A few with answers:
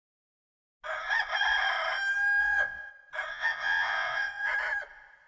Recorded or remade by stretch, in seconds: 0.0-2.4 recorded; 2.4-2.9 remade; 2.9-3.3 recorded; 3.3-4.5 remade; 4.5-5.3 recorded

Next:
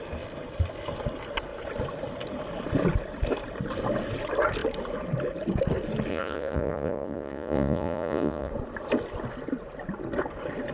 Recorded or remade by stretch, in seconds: 0.0-6.1 recorded; 6.1-8.5 remade; 8.5-10.7 recorded

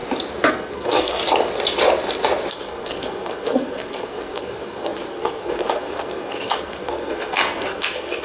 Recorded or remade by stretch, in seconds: 0.0-0.5 recorded; 0.5-1.2 remade; 1.2-2.5 recorded; 2.5-8.2 remade

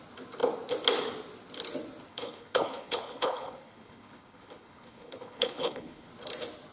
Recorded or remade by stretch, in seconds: 0.0-2.1 recorded; 2.1-6.1 remade; 6.1-6.7 recorded

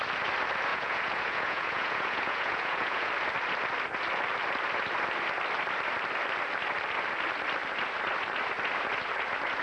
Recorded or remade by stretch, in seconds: 0.0-0.7 recorded; 0.7-3.1 remade; 3.1-9.6 recorded

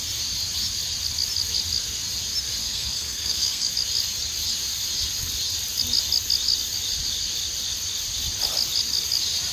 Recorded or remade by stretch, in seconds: 0.0-2.6 recorded; 2.6-3.7 remade; 3.7-9.5 recorded

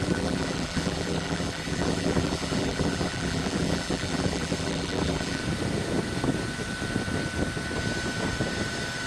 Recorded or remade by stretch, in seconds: 0.0-5.4 remade; 5.4-9.1 recorded